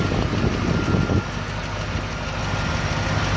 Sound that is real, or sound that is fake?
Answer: real